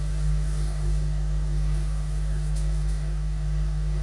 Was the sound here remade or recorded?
remade